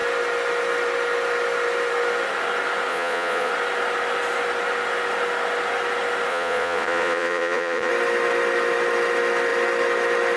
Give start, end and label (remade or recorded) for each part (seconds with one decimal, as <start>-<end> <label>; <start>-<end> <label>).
0.0-2.9 recorded; 2.9-3.5 remade; 3.5-6.3 recorded; 6.3-7.9 remade; 7.9-10.4 recorded